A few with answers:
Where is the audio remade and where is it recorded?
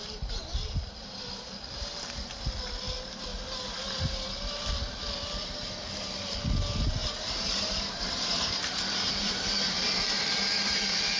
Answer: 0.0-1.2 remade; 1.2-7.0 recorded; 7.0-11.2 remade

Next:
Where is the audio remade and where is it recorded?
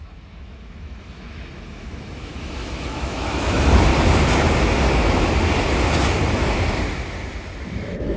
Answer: 0.0-3.9 remade; 3.9-7.7 recorded; 7.7-8.2 remade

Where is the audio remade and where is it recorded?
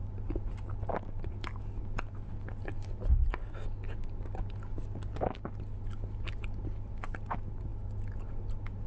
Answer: 0.0-8.9 recorded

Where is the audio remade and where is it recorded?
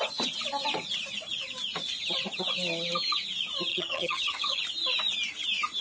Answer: 0.0-3.7 recorded; 3.7-4.6 remade; 4.6-5.8 recorded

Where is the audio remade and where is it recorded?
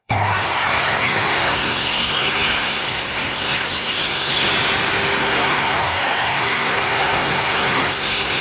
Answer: 0.0-4.5 remade; 4.5-5.2 recorded; 5.2-8.4 remade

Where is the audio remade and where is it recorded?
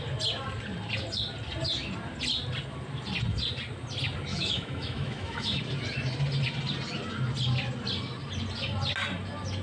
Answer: 0.0-4.3 recorded; 4.3-5.6 remade; 5.6-9.6 recorded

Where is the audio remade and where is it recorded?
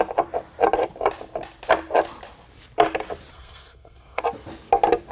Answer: 0.0-3.3 recorded; 3.3-4.2 remade; 4.2-5.1 recorded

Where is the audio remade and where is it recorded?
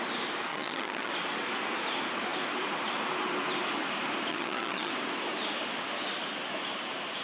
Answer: 0.0-0.5 recorded; 0.5-1.1 remade; 1.1-4.3 recorded; 4.3-4.9 remade; 4.9-7.2 recorded